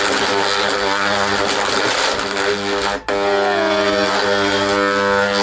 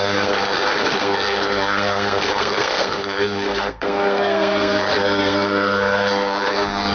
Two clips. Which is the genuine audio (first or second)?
first